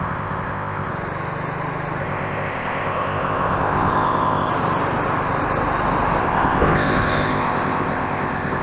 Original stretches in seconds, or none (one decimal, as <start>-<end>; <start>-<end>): 0.9-2.0; 4.5-6.2